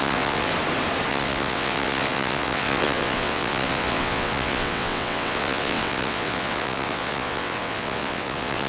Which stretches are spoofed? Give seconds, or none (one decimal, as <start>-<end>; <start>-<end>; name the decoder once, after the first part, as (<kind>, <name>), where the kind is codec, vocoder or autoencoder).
0.0-0.5 (vocoder, WaveNeXt); 1.1-8.7